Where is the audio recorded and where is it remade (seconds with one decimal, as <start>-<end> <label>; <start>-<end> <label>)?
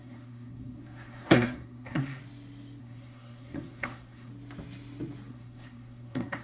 0.0-2.2 remade; 2.2-2.8 recorded; 2.8-4.3 remade; 4.3-5.3 recorded; 5.3-6.4 remade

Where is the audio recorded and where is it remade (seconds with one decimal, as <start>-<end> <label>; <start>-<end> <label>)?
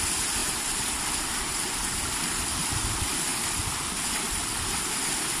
0.0-0.4 recorded; 0.4-1.0 remade; 1.0-1.5 recorded; 1.5-2.8 remade; 2.8-3.3 recorded; 3.3-3.9 remade; 3.9-5.4 recorded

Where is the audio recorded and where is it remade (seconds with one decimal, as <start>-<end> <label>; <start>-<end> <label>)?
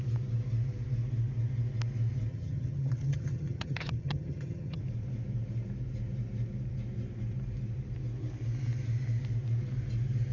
0.0-2.3 recorded; 2.3-4.8 remade; 4.8-10.3 recorded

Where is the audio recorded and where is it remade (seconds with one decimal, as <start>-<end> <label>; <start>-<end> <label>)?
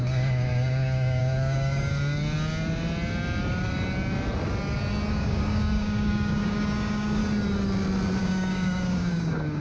0.0-1.9 remade; 1.9-5.1 recorded; 5.1-7.2 remade; 7.2-8.2 recorded; 8.2-9.6 remade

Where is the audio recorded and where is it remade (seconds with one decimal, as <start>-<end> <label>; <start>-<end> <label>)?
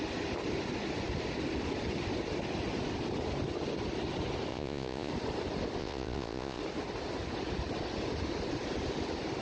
0.0-4.5 recorded; 4.5-5.1 remade; 5.1-5.8 recorded; 5.8-6.6 remade; 6.6-9.4 recorded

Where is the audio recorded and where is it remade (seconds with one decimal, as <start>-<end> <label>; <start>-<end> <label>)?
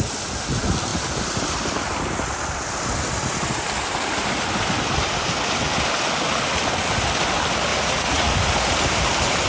0.0-7.7 recorded; 7.7-8.3 remade; 8.3-9.5 recorded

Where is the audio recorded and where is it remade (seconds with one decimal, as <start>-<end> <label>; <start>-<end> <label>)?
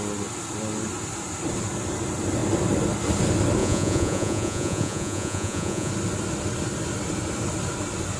0.0-3.6 recorded; 3.6-5.9 remade; 5.9-8.2 recorded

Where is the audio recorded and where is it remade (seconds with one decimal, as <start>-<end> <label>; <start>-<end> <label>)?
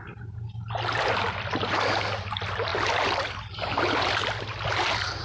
0.0-5.2 recorded